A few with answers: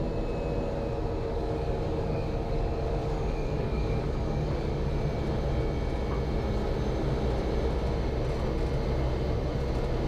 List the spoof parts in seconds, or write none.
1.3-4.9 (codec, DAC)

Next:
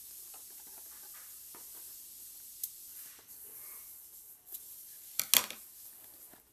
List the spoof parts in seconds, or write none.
2.9-5.2 (vocoder, BigVGAN v2)

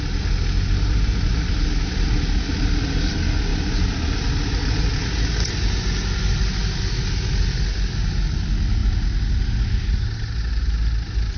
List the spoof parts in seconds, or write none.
none

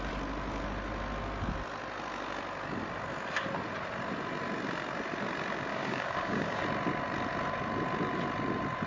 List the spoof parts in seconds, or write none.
5.7-6.6 (codec, DAC)

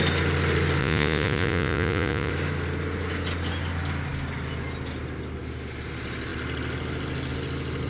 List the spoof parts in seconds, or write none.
0.8-2.3 (vocoder, Vocos)

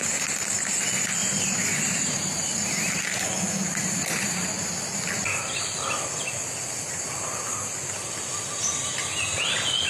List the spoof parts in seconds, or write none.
1.2-3.0 (vocoder, BigVGAN v2)

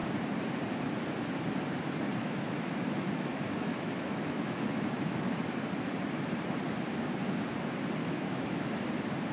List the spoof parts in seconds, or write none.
2.2-5.2 (autoencoder, DAC-VAE); 8.0-8.7